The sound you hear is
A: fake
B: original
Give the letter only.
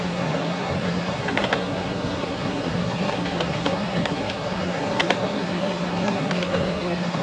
A